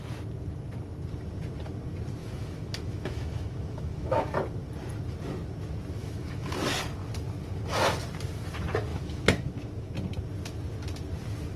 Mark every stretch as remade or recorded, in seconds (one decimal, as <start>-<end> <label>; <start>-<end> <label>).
0.0-2.2 recorded; 2.2-4.3 remade; 4.3-6.0 recorded; 6.0-6.5 remade; 6.5-8.9 recorded; 8.9-9.9 remade; 9.9-11.6 recorded